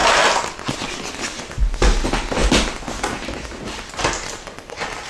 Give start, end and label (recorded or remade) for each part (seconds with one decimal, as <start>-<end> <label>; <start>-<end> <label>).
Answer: 0.0-5.1 recorded